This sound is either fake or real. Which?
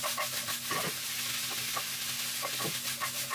real